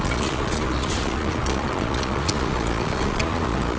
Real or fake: fake